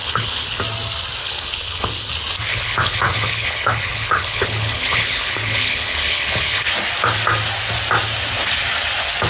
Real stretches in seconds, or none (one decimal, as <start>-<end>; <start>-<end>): 0.6-1.2; 2.1-2.5; 6.7-9.3

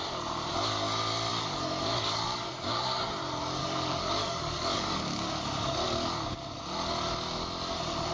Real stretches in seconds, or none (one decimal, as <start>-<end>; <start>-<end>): 0.0-1.3; 2.5-3.6; 5.6-8.1

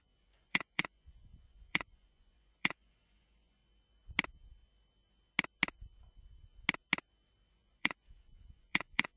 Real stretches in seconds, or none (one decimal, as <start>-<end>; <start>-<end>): 3.6-7.5

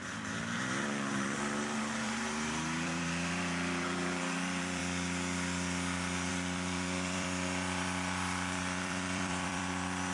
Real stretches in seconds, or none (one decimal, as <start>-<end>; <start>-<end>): 4.8-6.3

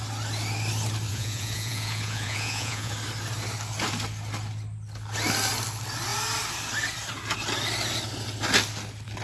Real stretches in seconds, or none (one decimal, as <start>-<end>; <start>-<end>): 0.0-1.1; 2.9-9.2

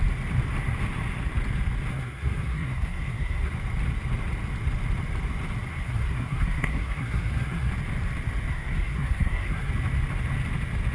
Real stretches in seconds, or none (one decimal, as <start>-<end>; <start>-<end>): 0.0-1.9; 3.5-5.7; 7.7-8.5; 9.7-10.9

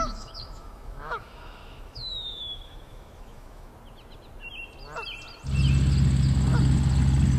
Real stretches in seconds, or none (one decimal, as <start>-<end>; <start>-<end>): 3.7-7.4

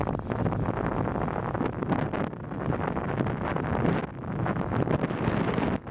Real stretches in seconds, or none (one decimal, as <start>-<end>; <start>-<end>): 0.0-5.9